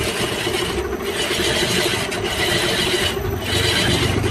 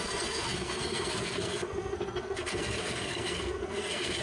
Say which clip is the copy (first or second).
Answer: second